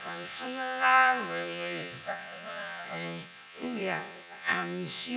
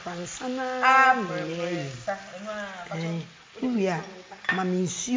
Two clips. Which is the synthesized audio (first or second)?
first